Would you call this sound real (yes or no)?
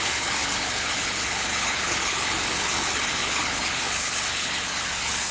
no